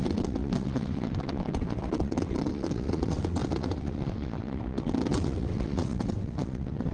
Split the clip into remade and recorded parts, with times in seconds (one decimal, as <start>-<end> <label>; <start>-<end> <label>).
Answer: 0.0-6.9 remade